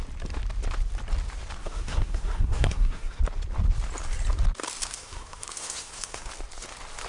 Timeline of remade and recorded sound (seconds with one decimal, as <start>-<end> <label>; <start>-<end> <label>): 0.0-1.6 recorded; 1.6-3.2 remade; 3.2-4.8 recorded; 4.8-6.3 remade; 6.3-7.1 recorded